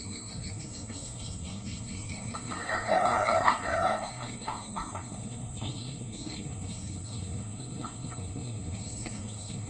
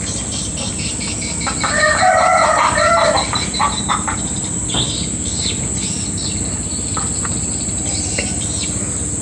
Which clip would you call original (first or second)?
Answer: second